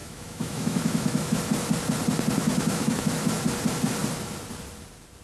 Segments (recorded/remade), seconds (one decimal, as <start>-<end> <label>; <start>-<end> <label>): 0.0-1.4 remade; 1.4-2.4 recorded; 2.4-3.3 remade; 3.3-5.2 recorded